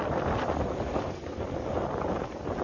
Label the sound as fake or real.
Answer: real